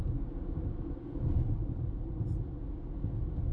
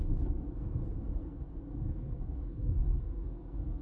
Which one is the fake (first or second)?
second